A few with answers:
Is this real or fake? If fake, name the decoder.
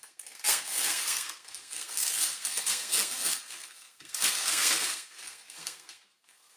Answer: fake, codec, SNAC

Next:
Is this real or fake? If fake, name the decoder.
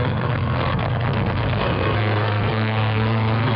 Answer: fake, codec, SNAC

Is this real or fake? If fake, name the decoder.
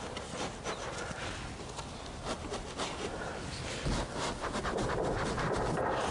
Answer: real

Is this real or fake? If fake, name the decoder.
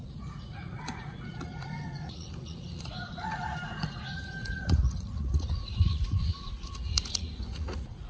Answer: fake, vocoder, Vocos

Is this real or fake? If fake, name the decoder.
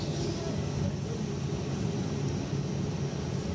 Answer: real